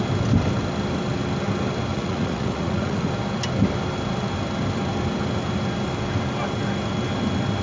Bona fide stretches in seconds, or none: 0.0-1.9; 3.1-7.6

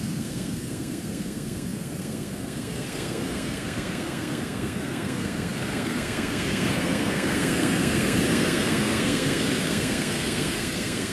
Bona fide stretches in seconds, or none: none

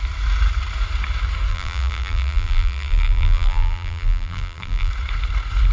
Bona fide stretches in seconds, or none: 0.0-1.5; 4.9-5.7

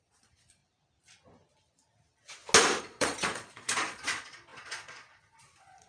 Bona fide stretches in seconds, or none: 0.6-2.8